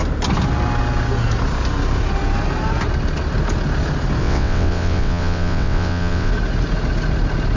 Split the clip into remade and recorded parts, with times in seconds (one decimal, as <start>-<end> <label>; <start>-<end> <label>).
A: 0.0-4.2 recorded; 4.2-6.3 remade; 6.3-7.6 recorded